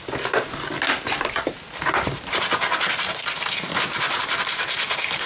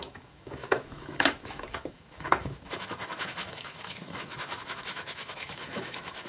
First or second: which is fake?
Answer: second